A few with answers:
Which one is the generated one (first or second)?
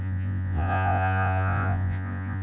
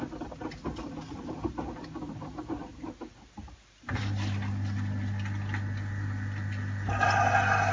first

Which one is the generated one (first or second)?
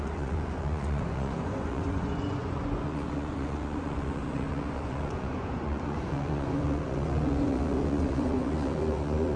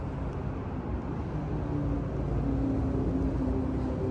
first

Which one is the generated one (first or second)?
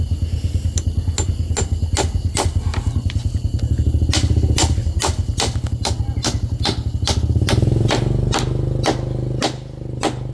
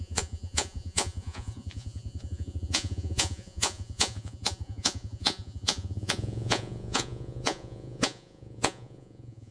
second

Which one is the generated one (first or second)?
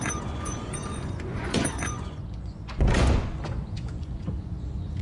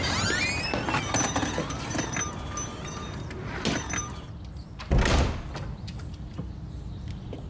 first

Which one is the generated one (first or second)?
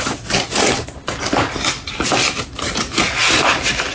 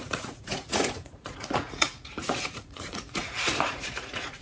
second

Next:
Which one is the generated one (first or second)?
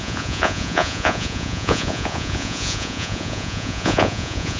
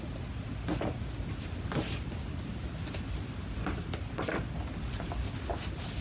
first